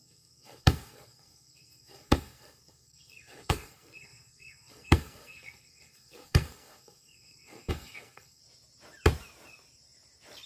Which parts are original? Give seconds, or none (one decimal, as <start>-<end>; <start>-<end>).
8.4-10.5